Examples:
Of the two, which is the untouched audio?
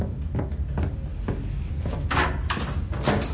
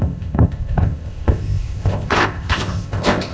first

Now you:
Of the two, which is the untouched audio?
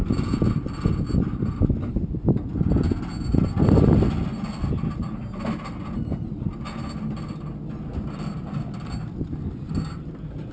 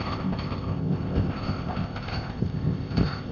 first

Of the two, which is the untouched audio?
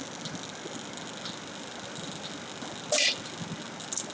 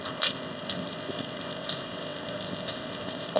first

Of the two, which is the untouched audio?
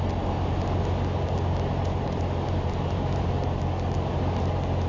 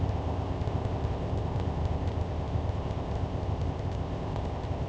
first